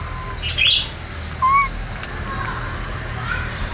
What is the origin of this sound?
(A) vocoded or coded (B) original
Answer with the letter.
B